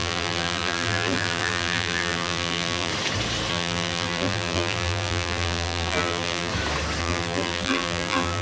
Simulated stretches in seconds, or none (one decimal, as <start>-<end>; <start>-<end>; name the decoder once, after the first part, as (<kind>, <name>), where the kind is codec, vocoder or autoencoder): 0.0-2.9 (vocoder, BigVGAN v2); 3.5-6.5; 7.0-8.4